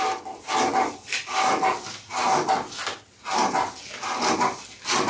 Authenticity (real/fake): real